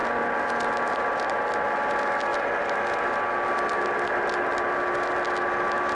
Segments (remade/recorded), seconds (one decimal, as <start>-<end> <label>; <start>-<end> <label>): 0.0-5.9 recorded